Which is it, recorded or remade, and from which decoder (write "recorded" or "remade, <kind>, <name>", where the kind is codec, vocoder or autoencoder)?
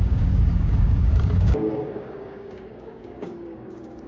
remade, codec, DAC